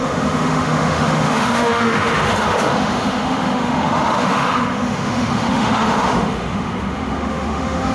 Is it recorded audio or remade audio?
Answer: remade